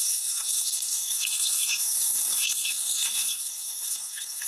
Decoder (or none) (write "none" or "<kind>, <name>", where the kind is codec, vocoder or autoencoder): codec, SNAC